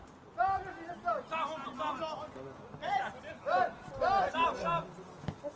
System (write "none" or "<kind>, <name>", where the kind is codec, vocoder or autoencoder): none